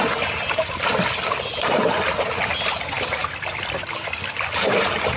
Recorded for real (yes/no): yes